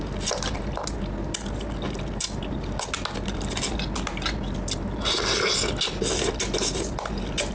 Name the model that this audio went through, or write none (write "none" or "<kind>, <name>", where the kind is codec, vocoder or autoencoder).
none